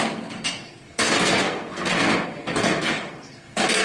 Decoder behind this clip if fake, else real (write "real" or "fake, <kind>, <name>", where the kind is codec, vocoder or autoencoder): fake, codec, SNAC